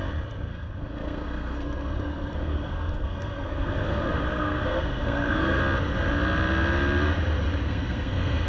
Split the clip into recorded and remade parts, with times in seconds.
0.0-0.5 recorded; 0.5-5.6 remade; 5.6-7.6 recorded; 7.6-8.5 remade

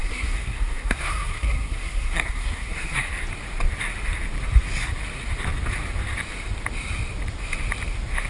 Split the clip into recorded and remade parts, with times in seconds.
0.0-3.1 remade; 3.1-8.3 recorded

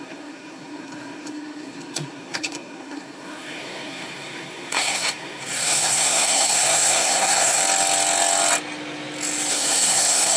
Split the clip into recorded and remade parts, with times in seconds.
0.0-7.6 remade; 7.6-9.5 recorded; 9.5-10.4 remade

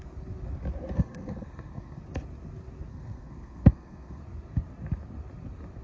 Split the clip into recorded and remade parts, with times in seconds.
0.0-0.9 recorded; 0.9-2.0 remade; 2.0-2.9 recorded; 2.9-4.2 remade; 4.2-5.8 recorded

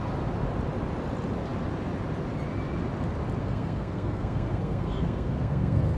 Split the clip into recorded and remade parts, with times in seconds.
0.0-3.4 recorded; 3.4-6.0 remade

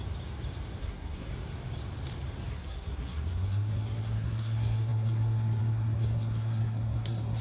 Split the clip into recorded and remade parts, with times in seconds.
0.0-0.8 recorded; 0.8-1.3 remade; 1.3-2.5 recorded; 2.5-7.4 remade